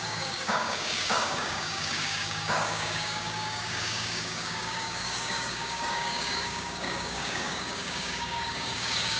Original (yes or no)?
no